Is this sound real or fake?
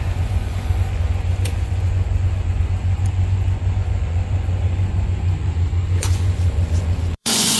fake